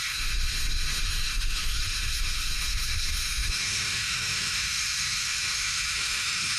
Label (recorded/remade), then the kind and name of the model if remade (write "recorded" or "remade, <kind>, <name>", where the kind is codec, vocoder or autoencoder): remade, autoencoder, DAC-VAE